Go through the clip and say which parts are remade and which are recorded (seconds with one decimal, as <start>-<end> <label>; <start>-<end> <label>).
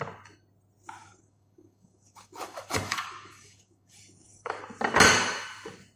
0.0-1.0 recorded; 1.0-4.6 remade; 4.6-6.0 recorded